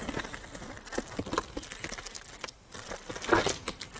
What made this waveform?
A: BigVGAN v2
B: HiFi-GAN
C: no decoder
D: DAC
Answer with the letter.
C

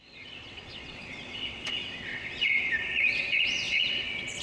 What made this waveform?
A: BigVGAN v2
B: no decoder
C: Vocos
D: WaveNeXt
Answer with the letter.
D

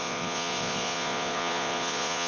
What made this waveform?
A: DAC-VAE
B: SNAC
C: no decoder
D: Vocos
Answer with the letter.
D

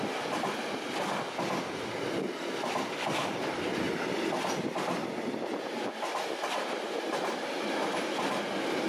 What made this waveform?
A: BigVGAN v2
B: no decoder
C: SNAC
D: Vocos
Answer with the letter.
B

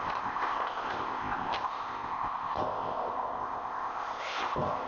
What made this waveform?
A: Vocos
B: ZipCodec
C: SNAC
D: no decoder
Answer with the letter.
B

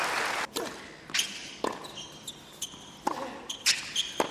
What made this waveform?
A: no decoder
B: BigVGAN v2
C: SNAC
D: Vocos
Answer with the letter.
A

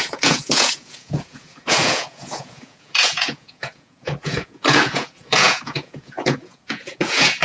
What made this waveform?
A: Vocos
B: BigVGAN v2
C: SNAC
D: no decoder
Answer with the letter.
A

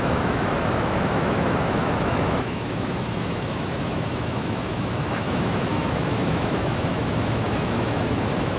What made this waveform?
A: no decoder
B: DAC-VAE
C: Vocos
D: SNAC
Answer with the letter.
B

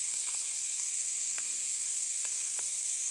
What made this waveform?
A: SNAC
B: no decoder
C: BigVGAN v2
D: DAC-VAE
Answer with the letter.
A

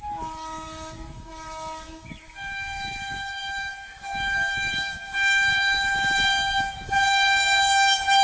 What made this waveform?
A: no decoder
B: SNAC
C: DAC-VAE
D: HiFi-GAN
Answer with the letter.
C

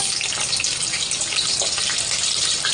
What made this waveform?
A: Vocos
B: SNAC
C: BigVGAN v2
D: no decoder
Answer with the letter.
D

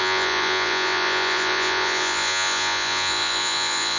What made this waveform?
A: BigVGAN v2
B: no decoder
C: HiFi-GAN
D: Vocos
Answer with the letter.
D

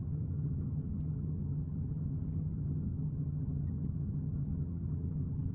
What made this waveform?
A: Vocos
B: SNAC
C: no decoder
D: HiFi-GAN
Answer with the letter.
D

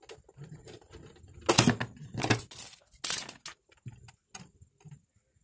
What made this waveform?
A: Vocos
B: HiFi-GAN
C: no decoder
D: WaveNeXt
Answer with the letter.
C